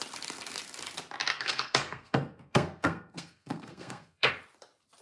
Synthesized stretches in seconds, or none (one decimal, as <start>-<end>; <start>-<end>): 1.3-4.3